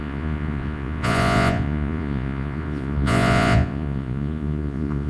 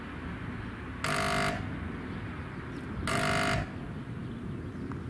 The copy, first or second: first